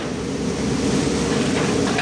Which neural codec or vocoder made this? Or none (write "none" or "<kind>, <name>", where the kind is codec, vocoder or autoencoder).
none